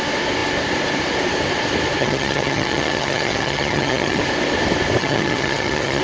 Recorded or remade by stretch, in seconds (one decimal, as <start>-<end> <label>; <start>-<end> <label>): 0.0-2.0 recorded; 2.0-4.2 remade; 4.2-5.0 recorded; 5.0-6.0 remade